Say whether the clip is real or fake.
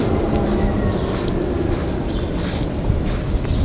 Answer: real